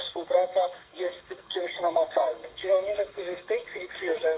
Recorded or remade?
remade